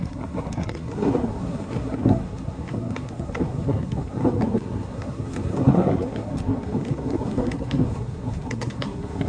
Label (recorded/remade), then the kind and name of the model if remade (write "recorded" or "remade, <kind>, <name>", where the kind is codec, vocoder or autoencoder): remade, codec, SNAC